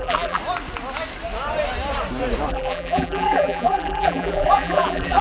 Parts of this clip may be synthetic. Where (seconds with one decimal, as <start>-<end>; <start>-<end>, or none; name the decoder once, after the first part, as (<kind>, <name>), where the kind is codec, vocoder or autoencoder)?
0.0-0.4 (vocoder, BigVGAN v2); 2.5-5.2